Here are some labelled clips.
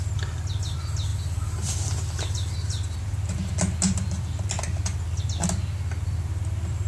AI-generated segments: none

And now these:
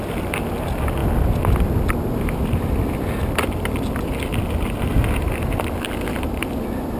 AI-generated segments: none

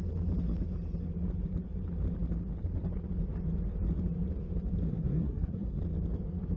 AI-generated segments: 4.9-5.8 (codec, SNAC)

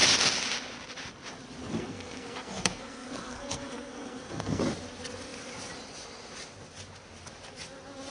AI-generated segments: 1.6-4.6 (codec, SNAC)

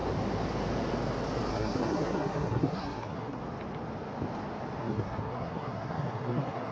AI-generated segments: 1.5-3.4 (codec, SNAC); 4.8-6.7

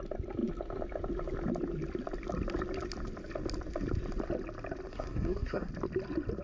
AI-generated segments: 4.9-5.7 (codec, SNAC)

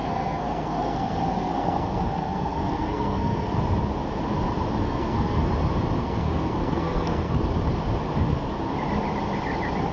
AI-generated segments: 0.0-3.6 (codec, SNAC); 4.8-5.5; 6.0-7.3

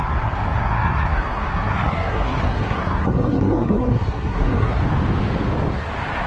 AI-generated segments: 0.0-4.8 (codec, SNAC)